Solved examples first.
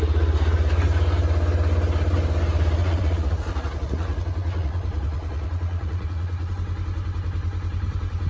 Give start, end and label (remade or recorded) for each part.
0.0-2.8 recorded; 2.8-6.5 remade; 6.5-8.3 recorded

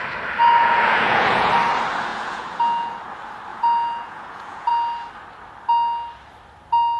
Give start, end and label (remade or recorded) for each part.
0.0-0.6 recorded; 0.6-1.5 remade; 1.5-2.1 recorded; 2.1-2.9 remade; 2.9-3.5 recorded; 3.5-4.7 remade; 4.7-7.0 recorded

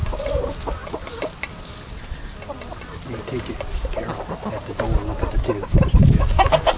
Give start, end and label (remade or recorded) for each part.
0.0-6.8 recorded

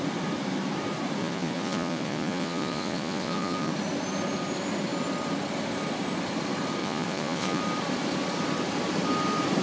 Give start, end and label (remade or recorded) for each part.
0.0-1.2 recorded; 1.2-3.7 remade; 3.7-6.8 recorded; 6.8-7.6 remade; 7.6-9.6 recorded

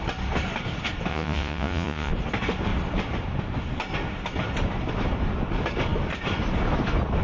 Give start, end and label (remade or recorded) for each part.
0.0-1.1 recorded; 1.1-2.1 remade; 2.1-7.2 recorded

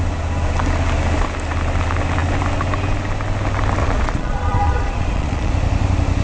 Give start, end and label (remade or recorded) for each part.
0.0-3.8 recorded; 3.8-5.5 remade; 5.5-6.2 recorded

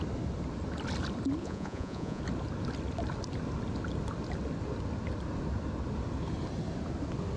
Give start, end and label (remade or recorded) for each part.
0.0-1.4 recorded; 1.4-2.2 remade; 2.2-7.4 recorded

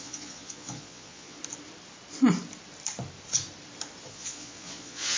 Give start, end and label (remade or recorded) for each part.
0.0-1.4 remade; 1.4-4.1 recorded; 4.1-5.2 remade